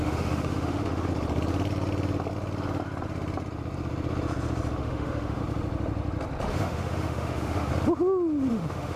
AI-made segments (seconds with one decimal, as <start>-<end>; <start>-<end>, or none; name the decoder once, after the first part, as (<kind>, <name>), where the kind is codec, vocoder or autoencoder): 0.0-1.1 (autoencoder, DAC-VAE); 4.8-5.4; 6.5-7.7; 8.5-9.0